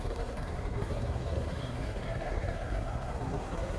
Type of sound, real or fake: fake